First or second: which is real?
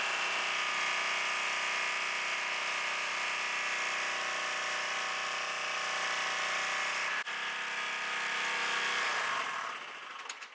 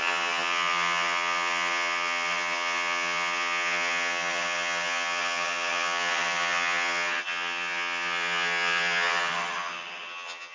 first